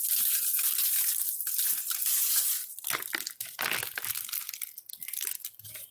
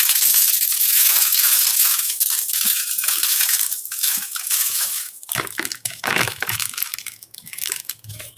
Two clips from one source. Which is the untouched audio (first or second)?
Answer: first